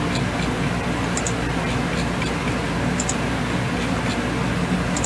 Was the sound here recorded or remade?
recorded